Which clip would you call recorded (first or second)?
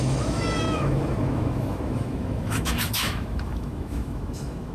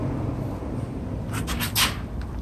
second